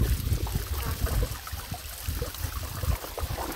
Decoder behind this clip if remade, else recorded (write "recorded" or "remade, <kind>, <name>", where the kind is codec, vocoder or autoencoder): recorded